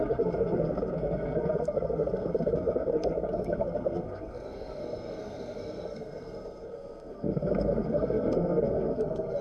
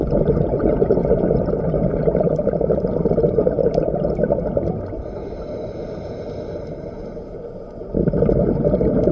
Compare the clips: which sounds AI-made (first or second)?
first